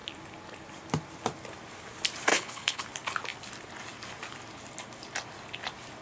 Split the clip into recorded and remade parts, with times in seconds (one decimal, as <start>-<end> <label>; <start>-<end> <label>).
0.0-2.3 recorded; 2.3-2.8 remade; 2.8-6.0 recorded